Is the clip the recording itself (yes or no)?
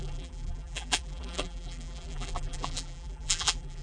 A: no